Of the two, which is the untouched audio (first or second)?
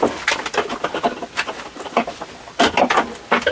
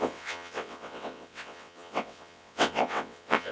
first